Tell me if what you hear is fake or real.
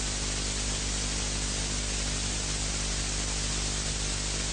real